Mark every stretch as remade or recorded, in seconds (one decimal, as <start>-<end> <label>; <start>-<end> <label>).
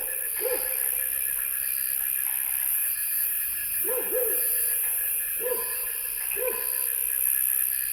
0.0-2.7 recorded; 2.7-5.9 remade; 5.9-7.9 recorded